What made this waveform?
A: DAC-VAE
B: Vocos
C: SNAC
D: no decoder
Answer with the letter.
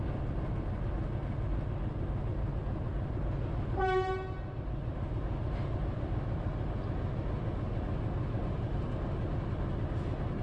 D